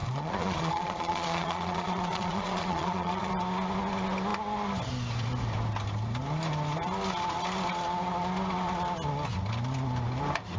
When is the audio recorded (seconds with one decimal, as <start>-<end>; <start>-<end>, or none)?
3.3-10.6